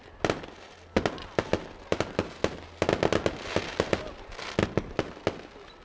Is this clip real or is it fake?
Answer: real